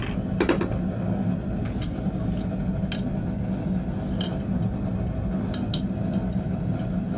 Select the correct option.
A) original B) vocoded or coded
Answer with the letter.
A